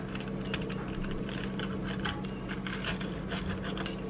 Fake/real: real